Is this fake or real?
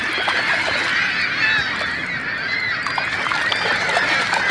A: real